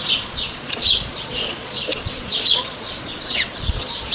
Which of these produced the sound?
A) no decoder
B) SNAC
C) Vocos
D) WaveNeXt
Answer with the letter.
C